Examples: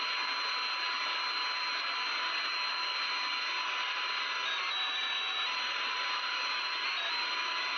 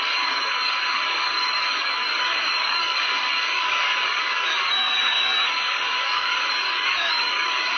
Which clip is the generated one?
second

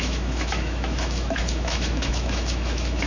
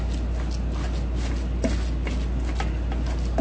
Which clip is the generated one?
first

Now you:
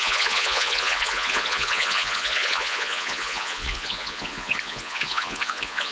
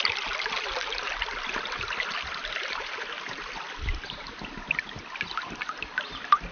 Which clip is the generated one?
first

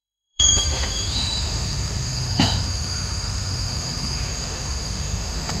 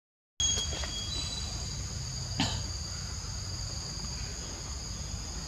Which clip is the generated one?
first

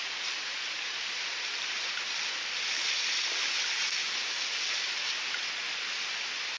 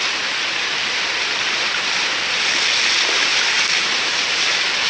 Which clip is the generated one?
second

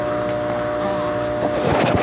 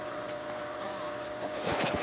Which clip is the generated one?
second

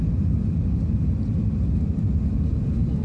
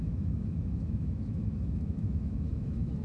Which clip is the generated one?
second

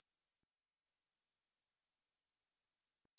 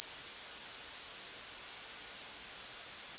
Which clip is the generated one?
first